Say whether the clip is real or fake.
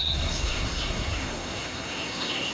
fake